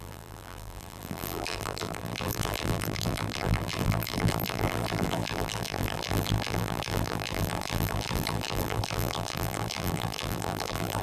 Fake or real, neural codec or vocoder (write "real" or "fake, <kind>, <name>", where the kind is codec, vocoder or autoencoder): fake, vocoder, BigVGAN v2